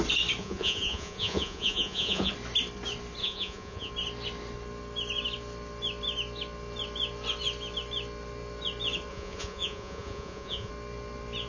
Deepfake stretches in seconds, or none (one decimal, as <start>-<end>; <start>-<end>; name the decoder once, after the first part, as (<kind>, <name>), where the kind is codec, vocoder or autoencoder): 0.4-2.3 (vocoder, Vocos); 3.2-3.9; 9.1-10.7